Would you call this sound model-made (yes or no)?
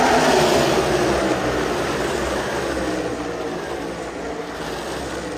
no